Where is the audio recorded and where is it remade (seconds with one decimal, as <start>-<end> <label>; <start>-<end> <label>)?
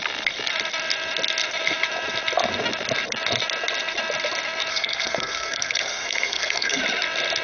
0.0-4.7 recorded; 4.7-6.8 remade; 6.8-7.4 recorded